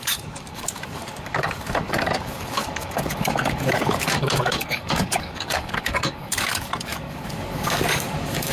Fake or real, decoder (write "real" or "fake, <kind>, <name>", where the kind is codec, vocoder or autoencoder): fake, codec, DAC